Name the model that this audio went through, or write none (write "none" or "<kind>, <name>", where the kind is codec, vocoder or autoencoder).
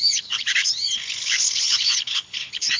codec, HILCodec